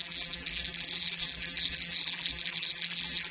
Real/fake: fake